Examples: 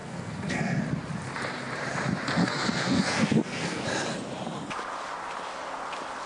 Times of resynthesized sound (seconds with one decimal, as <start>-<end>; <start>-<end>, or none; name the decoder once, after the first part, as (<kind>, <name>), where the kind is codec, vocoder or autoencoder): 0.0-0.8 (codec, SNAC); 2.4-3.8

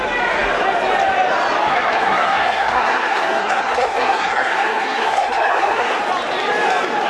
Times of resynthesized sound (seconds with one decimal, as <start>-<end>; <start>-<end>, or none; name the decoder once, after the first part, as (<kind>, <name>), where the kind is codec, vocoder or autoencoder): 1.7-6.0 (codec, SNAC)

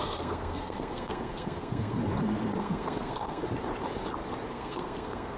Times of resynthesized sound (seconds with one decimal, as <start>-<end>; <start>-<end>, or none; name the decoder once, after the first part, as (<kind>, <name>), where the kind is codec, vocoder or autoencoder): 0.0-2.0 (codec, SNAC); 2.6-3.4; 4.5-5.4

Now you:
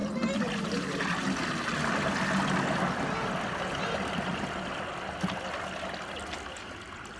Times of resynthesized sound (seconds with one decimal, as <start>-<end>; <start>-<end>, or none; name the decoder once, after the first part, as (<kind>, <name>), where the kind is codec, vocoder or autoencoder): none

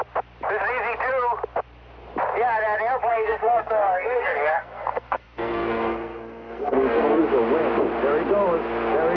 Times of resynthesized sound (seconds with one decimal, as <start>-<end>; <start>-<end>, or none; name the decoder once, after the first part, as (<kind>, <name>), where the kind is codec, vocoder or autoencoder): 3.1-7.2 (codec, SNAC)

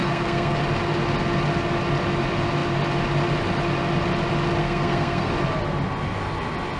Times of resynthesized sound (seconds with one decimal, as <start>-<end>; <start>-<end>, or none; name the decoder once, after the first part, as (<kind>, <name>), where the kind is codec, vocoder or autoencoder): 0.0-0.6 (codec, SNAC); 4.6-5.3

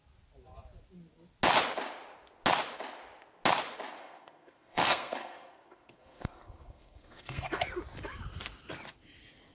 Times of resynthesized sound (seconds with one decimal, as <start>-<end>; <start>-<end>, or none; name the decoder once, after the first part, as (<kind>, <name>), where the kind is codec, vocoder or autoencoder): 4.0-7.6 (codec, SNAC)